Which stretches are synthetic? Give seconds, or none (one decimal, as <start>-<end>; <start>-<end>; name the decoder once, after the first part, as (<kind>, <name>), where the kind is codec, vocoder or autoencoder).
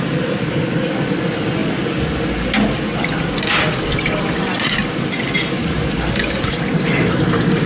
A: 5.6-7.7 (vocoder, BigVGAN v2)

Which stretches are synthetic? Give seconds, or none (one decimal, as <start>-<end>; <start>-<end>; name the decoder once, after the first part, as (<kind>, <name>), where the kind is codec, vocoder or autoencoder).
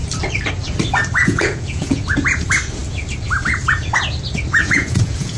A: 1.2-2.0 (vocoder, Vocos); 4.6-5.4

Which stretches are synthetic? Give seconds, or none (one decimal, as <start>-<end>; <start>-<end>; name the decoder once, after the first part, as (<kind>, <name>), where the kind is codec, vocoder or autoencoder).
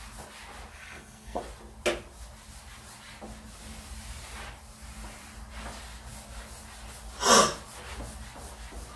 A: 0.7-1.4 (codec, SNAC)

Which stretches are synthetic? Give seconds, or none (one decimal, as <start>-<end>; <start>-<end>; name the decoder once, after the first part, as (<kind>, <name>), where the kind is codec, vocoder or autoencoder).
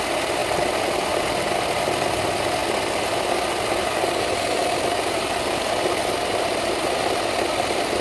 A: none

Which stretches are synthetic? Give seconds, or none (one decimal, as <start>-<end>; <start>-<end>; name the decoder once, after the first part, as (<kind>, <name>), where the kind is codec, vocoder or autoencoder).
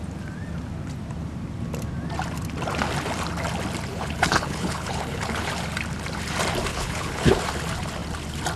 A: 3.9-5.5 (codec, HILCodec); 6.7-7.4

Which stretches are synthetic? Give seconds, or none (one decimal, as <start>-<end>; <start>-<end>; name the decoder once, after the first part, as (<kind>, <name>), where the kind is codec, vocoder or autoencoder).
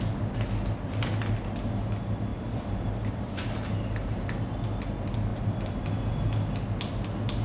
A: 2.3-4.4 (vocoder, BigVGAN v2)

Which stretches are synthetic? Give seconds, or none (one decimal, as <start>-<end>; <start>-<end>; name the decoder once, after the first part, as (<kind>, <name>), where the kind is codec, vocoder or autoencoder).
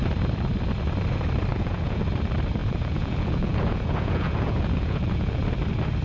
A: 1.5-2.0 (vocoder, Vocos); 2.6-5.4